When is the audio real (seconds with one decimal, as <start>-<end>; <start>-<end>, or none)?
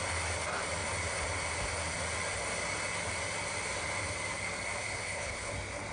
0.0-4.8; 5.5-5.9